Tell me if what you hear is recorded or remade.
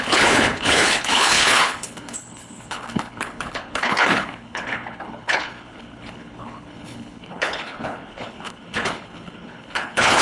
remade